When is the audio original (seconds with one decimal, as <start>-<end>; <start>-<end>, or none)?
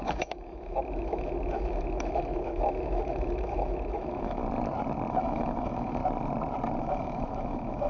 4.4-5.1; 6.0-6.8